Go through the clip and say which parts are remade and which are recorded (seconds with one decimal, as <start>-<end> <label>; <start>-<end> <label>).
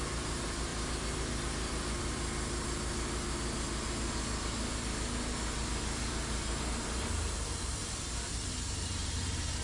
0.0-0.7 remade; 0.7-5.7 recorded; 5.7-7.8 remade; 7.8-8.5 recorded; 8.5-9.6 remade